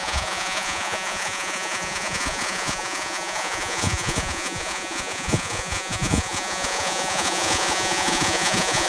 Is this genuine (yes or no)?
no